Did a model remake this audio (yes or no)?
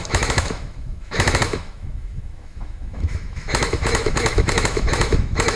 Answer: yes